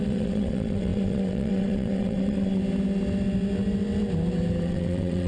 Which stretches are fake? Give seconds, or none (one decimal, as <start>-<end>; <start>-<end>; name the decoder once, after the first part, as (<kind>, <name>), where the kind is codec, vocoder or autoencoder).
0.0-2.6 (vocoder, WaveNeXt); 4.6-5.3